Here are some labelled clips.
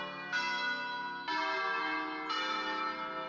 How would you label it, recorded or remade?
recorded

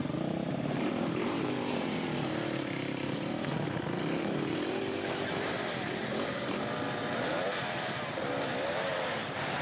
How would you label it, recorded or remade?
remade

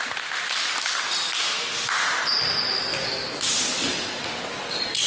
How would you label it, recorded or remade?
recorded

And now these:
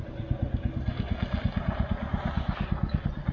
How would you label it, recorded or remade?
recorded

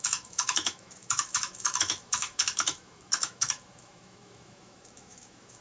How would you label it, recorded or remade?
remade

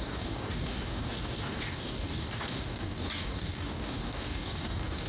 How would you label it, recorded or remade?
remade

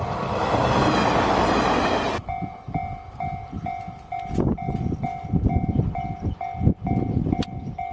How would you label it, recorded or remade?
recorded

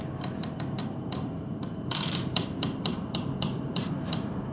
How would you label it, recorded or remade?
remade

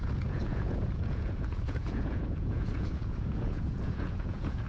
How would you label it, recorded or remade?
remade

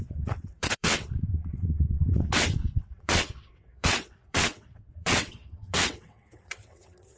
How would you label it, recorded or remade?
remade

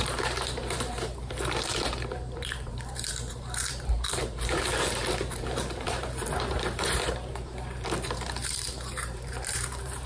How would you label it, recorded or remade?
remade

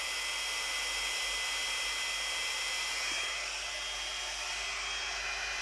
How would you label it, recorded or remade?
recorded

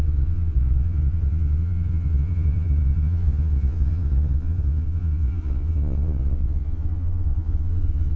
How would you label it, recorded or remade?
remade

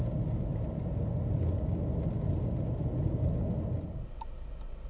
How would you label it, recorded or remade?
recorded